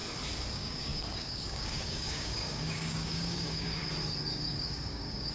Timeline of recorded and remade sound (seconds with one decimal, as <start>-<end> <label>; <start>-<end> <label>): 0.0-0.5 recorded; 0.5-3.8 remade; 3.8-4.3 recorded; 4.3-5.3 remade